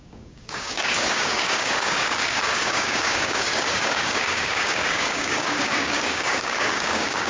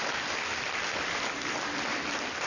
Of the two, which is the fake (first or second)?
first